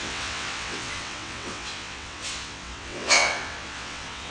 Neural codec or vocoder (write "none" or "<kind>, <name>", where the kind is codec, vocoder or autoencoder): vocoder, WaveNeXt